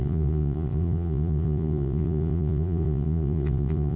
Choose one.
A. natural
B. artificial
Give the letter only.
B